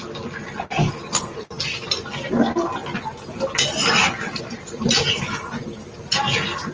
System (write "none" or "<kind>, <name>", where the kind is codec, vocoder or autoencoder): none